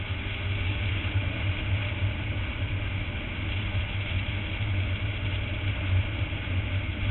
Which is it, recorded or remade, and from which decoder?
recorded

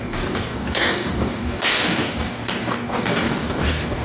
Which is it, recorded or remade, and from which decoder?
remade, codec, DAC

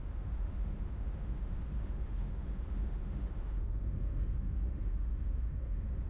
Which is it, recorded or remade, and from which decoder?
remade, autoencoder, DAC-VAE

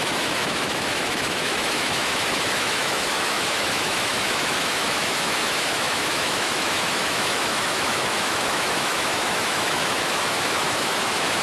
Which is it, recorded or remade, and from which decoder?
remade, autoencoder, DAC-VAE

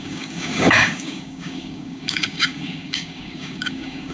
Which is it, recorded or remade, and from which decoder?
remade, codec, DAC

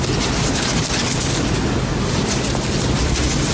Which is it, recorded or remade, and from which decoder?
recorded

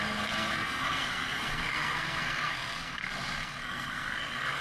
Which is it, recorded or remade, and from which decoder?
remade, codec, SNAC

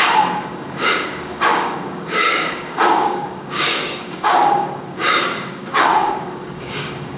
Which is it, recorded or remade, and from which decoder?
remade, codec, DAC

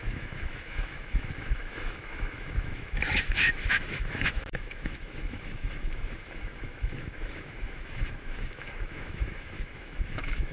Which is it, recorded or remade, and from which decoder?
remade, autoencoder, DAC-VAE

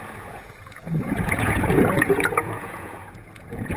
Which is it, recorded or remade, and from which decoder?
remade, vocoder, Vocos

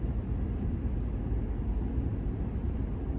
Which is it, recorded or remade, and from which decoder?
recorded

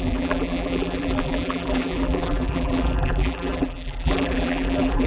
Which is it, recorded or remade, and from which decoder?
remade, vocoder, BigVGAN v2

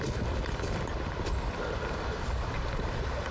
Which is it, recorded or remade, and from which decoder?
recorded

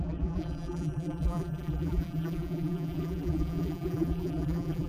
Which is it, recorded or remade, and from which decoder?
remade, vocoder, BigVGAN v2